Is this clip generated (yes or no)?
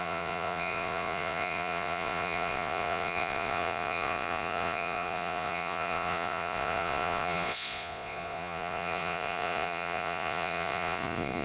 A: yes